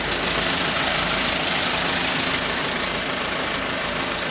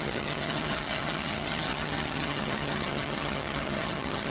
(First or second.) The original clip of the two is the first